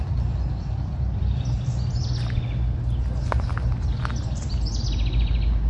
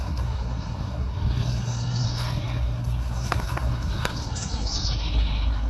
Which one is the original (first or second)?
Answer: first